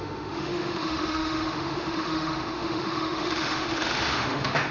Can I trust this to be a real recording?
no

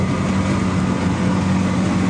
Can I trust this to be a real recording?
yes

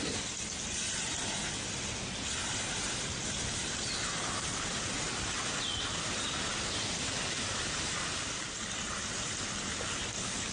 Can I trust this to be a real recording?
yes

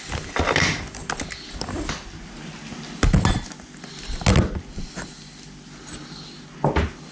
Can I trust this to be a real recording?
yes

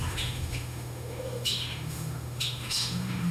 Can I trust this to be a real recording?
no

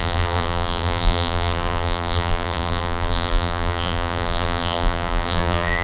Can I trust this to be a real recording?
no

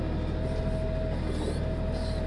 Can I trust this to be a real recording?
yes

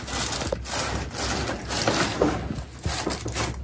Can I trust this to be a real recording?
yes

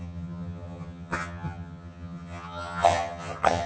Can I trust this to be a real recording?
no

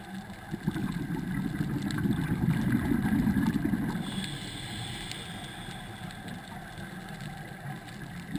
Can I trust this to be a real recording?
yes